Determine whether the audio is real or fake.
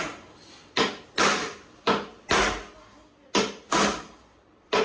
real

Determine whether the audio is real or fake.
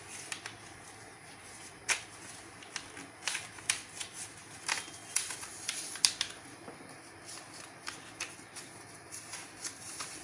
real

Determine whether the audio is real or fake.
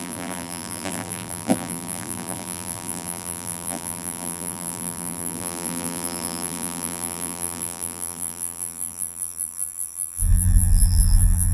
fake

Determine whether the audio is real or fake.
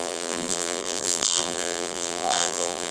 fake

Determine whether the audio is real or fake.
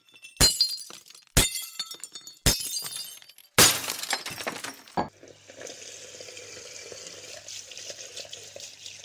real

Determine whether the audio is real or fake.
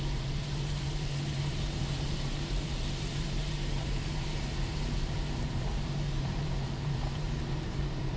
fake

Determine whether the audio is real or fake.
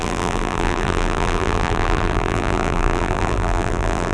fake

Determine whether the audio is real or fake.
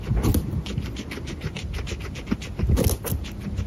real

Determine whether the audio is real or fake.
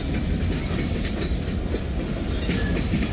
real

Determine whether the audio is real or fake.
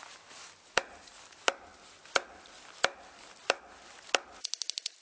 real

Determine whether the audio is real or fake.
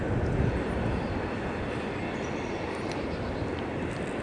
real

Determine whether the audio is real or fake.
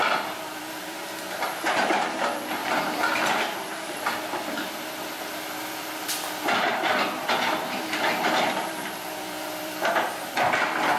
fake